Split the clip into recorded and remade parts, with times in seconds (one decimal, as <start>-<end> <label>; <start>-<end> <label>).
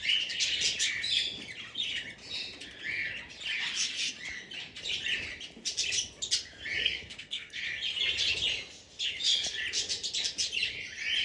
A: 0.0-6.8 recorded; 6.8-7.6 remade; 7.6-11.2 recorded